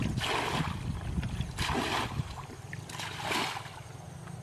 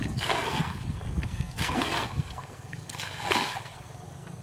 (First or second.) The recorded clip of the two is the first